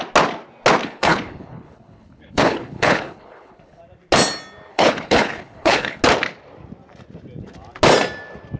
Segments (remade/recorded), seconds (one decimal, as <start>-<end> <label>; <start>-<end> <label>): 0.0-0.8 recorded; 0.8-3.8 remade; 3.8-4.7 recorded; 4.7-6.0 remade; 6.0-8.6 recorded